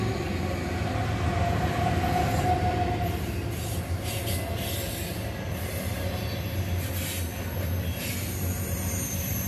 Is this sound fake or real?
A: real